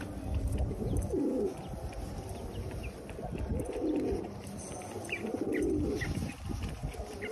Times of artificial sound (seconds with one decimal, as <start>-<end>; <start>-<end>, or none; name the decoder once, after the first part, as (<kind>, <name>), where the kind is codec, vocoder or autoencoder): 3.5-4.8 (vocoder, BigVGAN v2)